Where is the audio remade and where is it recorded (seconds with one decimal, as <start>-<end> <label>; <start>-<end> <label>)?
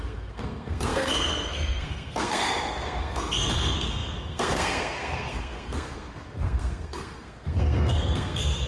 0.0-8.7 remade